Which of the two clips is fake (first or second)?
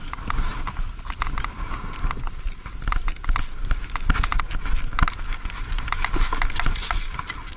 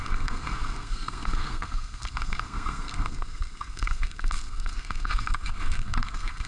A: second